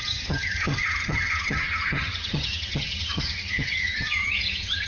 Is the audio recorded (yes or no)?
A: no